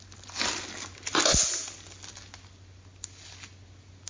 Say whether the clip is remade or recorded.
recorded